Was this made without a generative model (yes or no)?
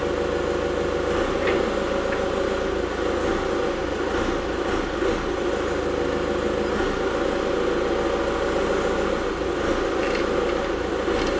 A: yes